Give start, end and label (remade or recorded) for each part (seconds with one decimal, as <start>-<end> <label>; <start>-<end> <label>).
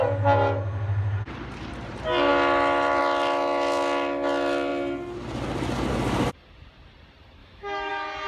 0.0-7.4 recorded; 7.4-7.9 remade; 7.9-8.3 recorded